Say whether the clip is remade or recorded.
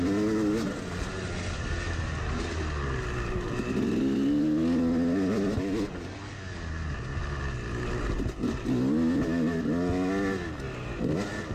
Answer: recorded